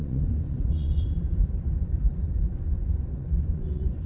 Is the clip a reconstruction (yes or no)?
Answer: yes